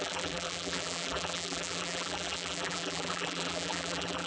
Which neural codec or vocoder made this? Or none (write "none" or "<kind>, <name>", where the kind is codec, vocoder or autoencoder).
vocoder, BigVGAN v2